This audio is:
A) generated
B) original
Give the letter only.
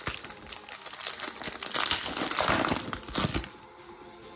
B